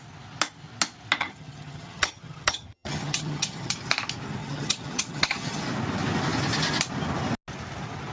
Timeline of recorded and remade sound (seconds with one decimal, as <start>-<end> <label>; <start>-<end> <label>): 0.0-1.2 recorded; 1.2-3.7 remade; 3.7-4.4 recorded; 4.4-5.6 remade; 5.6-8.1 recorded